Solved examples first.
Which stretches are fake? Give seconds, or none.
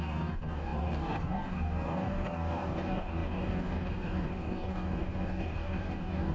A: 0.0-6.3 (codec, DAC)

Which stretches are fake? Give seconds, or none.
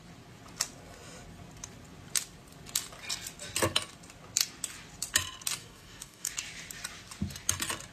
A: 5.6-6.3 (codec, DAC)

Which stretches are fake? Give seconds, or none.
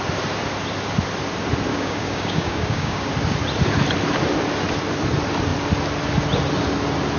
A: 1.7-3.1 (codec, DAC)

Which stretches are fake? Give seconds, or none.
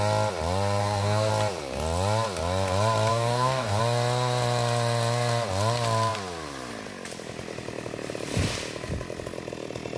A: 0.8-1.3 (codec, DAC); 3.1-3.8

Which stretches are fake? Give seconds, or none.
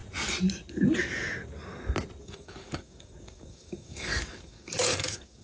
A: 2.2-5.4 (codec, DAC)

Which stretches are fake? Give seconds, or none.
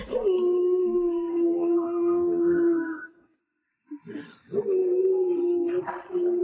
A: 1.3-3.4 (codec, DAC)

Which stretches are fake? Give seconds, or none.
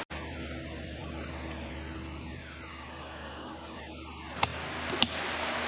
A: 2.7-3.8 (codec, DAC)